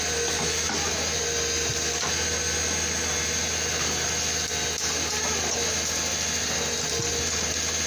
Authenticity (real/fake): real